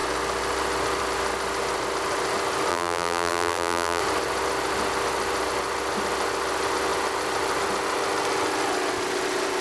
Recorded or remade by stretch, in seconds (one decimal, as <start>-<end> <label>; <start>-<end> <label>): 0.0-2.7 recorded; 2.7-4.0 remade; 4.0-9.6 recorded